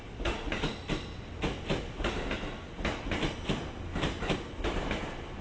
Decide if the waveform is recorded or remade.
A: recorded